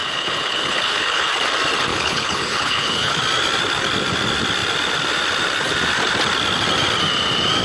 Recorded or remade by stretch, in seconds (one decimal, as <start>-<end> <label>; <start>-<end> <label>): 0.0-1.3 remade; 1.3-1.9 recorded; 1.9-3.2 remade; 3.2-7.6 recorded